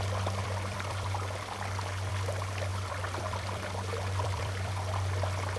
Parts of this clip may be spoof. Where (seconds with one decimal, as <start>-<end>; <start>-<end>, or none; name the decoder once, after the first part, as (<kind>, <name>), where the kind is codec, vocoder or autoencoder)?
0.4-2.1 (vocoder, BigVGAN v2); 2.7-4.7